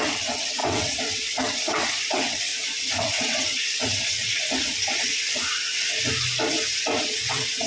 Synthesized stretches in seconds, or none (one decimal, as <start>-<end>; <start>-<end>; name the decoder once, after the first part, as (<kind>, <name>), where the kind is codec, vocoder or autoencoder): 0.0-2.5 (vocoder, WaveNeXt); 3.0-5.1; 7.0-7.7